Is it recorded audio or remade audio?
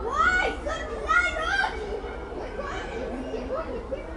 recorded